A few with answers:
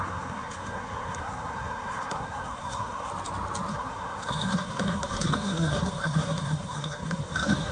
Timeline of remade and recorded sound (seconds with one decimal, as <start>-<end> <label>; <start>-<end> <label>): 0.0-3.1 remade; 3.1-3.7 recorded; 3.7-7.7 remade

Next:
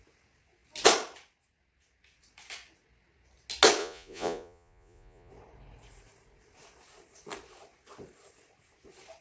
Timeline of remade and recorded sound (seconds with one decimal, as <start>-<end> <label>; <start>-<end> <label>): 0.0-3.8 recorded; 3.8-5.3 remade; 5.3-9.2 recorded

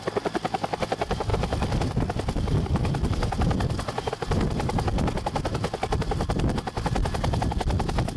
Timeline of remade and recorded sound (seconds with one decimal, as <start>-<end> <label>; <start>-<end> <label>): 0.0-1.3 recorded; 1.3-4.1 remade; 4.1-8.2 recorded

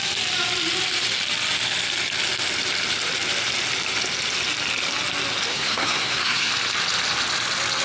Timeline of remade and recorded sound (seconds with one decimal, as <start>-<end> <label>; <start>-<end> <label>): 0.0-5.5 recorded; 5.5-6.5 remade; 6.5-7.8 recorded

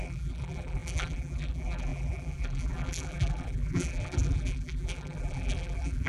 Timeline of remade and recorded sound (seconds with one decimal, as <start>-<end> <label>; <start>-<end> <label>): 0.0-6.1 remade